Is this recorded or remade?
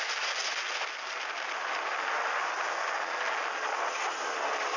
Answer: recorded